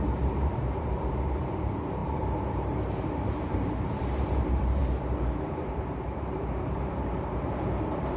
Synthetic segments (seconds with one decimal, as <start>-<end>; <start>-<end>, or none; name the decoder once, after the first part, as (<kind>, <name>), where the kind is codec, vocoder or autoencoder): 0.0-8.2 (vocoder, BigVGAN v2)